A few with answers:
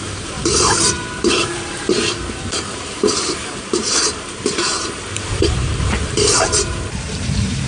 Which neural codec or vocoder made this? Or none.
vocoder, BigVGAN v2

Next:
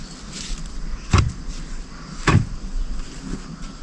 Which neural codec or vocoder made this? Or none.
none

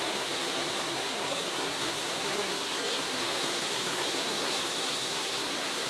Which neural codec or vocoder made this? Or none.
codec, SNAC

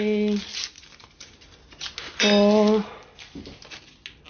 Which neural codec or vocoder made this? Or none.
none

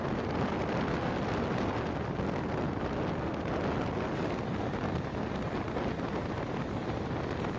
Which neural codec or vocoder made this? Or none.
none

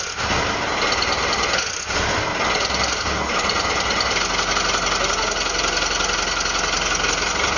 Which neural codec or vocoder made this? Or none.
none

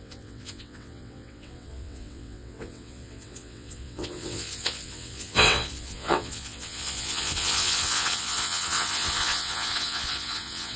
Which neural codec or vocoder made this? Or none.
vocoder, WaveNeXt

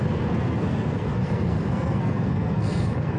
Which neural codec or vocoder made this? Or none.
codec, SNAC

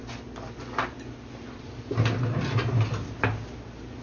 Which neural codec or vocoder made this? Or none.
none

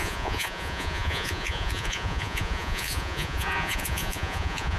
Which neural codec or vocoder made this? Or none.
vocoder, Vocos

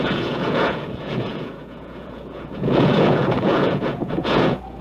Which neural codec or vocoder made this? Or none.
vocoder, Vocos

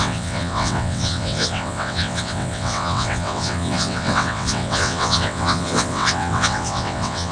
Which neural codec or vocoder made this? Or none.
vocoder, WaveNeXt